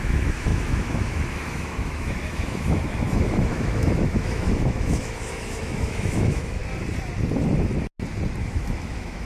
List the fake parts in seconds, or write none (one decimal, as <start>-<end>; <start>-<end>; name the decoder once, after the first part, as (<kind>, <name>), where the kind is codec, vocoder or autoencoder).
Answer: 0.0-6.6 (autoencoder, DAC-VAE); 8.4-9.2